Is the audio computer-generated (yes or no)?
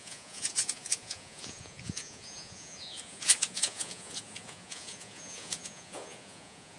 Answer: yes